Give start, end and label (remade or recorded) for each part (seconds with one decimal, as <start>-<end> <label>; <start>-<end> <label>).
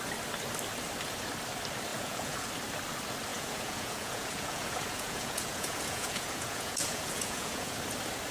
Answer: 0.0-1.9 recorded; 1.9-2.5 remade; 2.5-3.3 recorded; 3.3-7.8 remade; 7.8-8.3 recorded